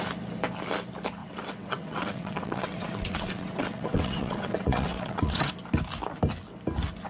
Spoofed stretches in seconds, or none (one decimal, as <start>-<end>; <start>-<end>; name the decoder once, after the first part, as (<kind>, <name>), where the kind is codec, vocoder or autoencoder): 1.2-5.5 (vocoder, WaveNeXt)